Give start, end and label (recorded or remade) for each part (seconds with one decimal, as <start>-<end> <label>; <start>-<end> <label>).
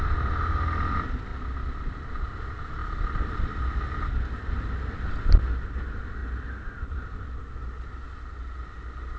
0.0-1.3 recorded; 1.3-2.1 remade; 2.1-2.8 recorded; 2.8-3.5 remade; 3.5-6.2 recorded; 6.2-7.4 remade; 7.4-9.2 recorded